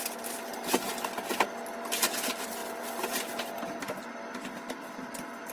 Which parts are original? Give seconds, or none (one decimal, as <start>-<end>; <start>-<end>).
0.0-5.5